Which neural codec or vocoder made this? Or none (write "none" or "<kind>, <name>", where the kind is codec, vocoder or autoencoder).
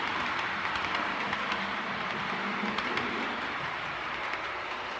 none